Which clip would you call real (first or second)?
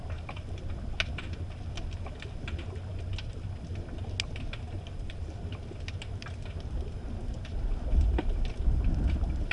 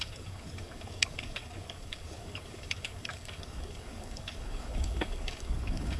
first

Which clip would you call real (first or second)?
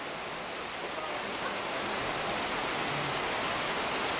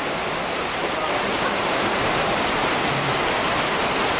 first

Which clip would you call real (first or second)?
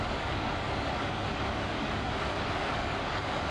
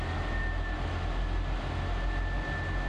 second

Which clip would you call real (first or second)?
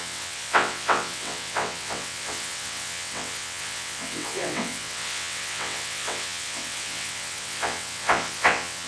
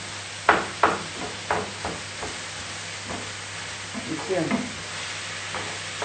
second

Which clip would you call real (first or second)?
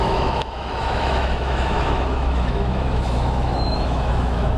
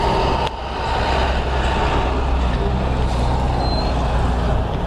second